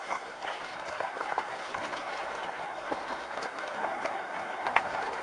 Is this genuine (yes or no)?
no